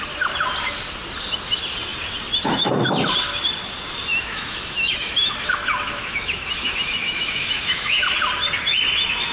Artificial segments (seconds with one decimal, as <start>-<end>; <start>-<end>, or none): 4.1-8.0